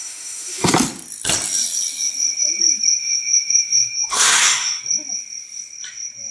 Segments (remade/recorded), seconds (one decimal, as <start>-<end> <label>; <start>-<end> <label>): 0.0-0.7 remade; 0.7-3.0 recorded; 3.0-4.8 remade; 4.8-6.3 recorded